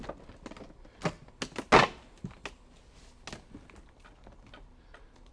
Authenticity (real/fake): real